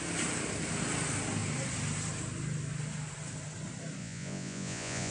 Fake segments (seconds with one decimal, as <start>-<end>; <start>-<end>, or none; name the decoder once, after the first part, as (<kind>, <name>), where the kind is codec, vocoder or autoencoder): 4.0-5.1 (vocoder, Vocos)